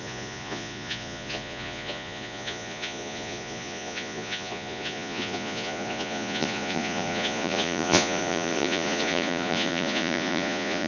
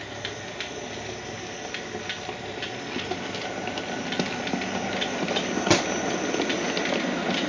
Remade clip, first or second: first